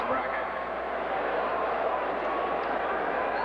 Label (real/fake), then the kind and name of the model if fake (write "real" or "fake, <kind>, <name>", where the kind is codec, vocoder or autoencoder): fake, vocoder, BigVGAN v2